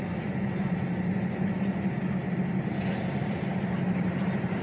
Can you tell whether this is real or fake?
real